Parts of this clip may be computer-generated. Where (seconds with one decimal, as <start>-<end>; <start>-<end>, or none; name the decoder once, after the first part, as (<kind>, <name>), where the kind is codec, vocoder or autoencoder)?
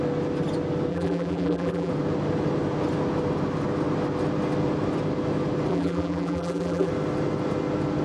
0.9-1.9 (vocoder, BigVGAN v2); 5.7-6.9